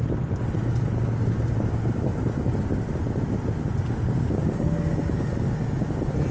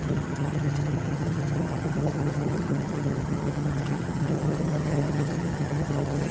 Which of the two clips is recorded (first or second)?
first